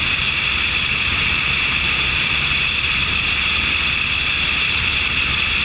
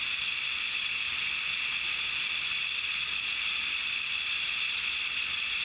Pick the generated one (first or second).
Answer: first